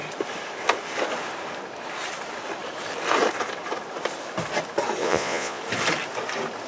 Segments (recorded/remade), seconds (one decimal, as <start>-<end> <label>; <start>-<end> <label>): 0.0-5.0 recorded; 5.0-5.6 remade; 5.6-6.7 recorded

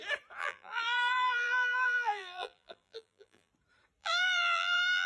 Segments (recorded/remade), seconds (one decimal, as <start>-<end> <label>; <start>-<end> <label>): 0.0-0.4 recorded; 0.4-3.5 remade; 3.5-4.0 recorded; 4.0-5.1 remade

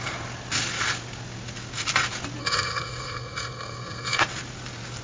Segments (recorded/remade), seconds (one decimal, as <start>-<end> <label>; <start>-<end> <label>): 0.0-2.4 recorded; 2.4-4.2 remade; 4.2-5.0 recorded

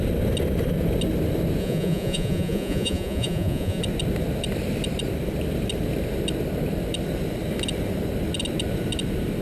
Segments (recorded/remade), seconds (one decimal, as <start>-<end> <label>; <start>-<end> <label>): 0.0-1.6 recorded; 1.6-3.8 remade; 3.8-9.4 recorded

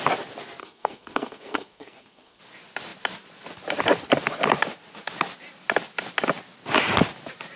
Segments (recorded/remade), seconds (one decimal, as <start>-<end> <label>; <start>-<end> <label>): 0.0-0.6 recorded; 0.6-2.4 remade; 2.4-7.5 recorded

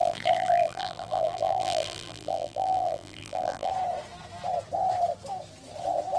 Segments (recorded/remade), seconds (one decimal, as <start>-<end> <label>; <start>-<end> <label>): 0.0-3.7 remade; 3.7-6.2 recorded

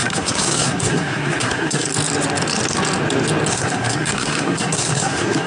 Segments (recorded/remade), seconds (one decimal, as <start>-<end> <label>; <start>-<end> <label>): 0.0-1.9 remade; 1.9-3.5 recorded; 3.5-5.5 remade

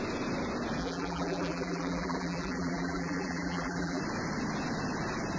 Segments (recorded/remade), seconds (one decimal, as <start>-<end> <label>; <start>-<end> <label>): 0.0-0.8 recorded; 0.8-4.0 remade; 4.0-5.4 recorded